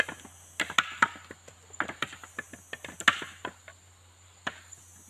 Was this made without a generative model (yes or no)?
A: yes